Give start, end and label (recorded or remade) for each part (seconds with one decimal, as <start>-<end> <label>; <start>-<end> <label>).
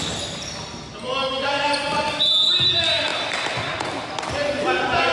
0.0-5.1 recorded